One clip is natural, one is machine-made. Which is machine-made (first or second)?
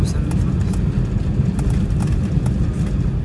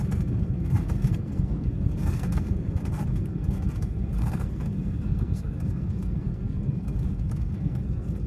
second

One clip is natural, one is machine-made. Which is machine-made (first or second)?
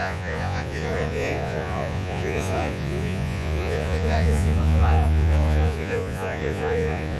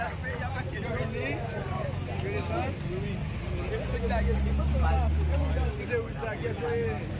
first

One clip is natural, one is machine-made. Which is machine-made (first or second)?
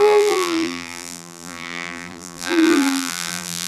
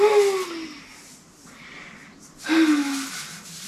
first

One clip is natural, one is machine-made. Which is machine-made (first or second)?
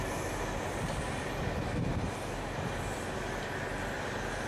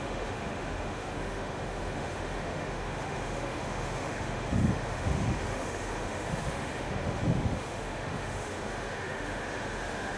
second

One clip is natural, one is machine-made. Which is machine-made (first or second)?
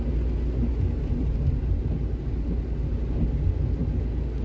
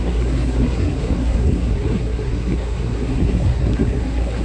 second